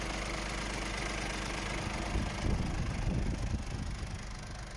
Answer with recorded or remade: recorded